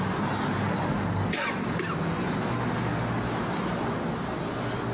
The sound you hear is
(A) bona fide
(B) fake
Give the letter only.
A